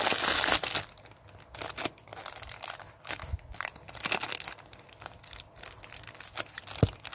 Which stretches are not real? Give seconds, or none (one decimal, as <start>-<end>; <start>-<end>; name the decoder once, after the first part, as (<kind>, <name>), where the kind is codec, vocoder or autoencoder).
none